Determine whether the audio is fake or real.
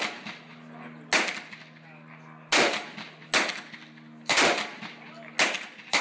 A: real